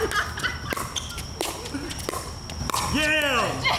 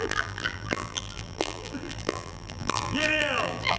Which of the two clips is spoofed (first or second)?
second